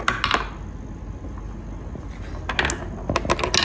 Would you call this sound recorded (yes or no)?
yes